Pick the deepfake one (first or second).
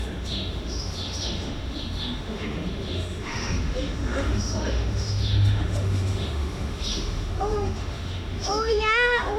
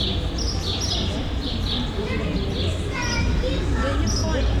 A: first